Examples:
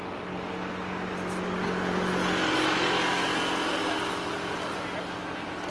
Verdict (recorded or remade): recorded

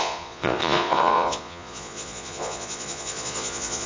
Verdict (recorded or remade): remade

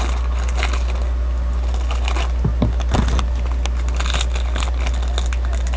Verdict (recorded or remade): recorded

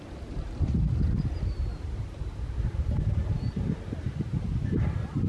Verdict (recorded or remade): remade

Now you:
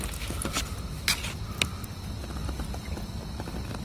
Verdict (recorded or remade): recorded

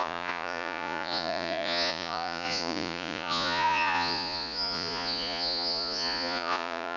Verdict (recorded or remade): remade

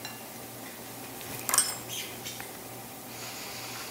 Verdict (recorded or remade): recorded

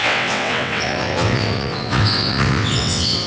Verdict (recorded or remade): remade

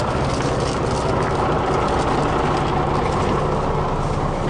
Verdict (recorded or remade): recorded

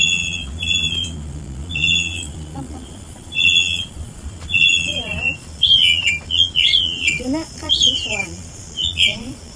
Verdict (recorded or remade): remade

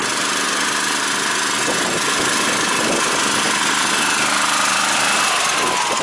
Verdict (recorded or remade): recorded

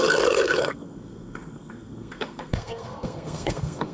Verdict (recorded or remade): remade